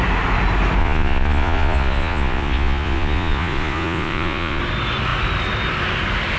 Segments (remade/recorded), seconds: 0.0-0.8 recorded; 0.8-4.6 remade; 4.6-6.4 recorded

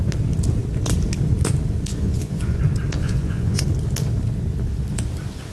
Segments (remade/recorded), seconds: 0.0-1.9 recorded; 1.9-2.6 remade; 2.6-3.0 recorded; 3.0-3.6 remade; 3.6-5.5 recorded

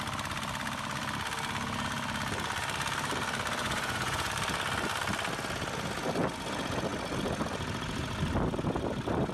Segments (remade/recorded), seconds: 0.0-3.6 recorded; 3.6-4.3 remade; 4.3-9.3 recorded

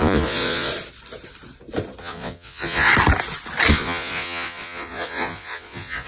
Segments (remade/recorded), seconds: 0.0-0.7 remade; 0.7-2.0 recorded; 2.0-2.9 remade; 2.9-3.7 recorded; 3.7-6.1 remade